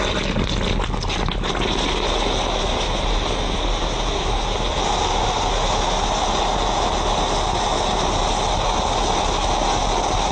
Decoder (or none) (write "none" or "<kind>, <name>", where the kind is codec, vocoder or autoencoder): none